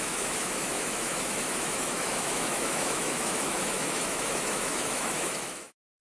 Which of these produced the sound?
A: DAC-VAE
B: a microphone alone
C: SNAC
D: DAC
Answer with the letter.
A